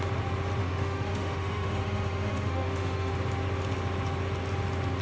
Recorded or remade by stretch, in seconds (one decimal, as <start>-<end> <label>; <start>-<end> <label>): 0.0-0.6 recorded; 0.6-3.1 remade; 3.1-5.0 recorded